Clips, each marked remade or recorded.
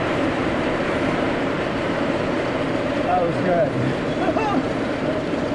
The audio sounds remade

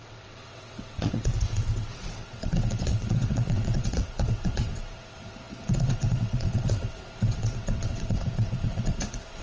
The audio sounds remade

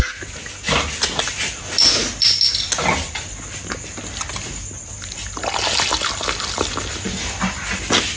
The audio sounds recorded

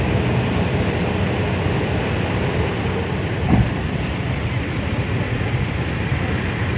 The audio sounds recorded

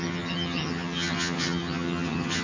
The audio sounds remade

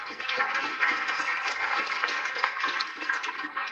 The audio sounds remade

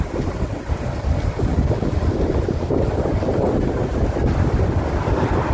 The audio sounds remade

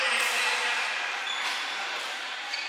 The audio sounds recorded